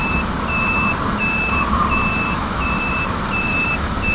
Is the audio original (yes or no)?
no